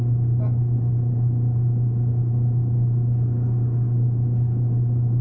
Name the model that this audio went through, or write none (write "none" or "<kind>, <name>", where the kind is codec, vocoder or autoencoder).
none